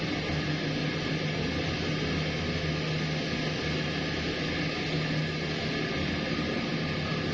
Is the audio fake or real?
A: real